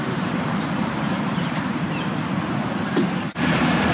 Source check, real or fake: fake